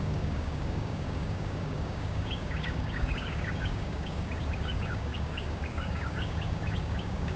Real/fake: fake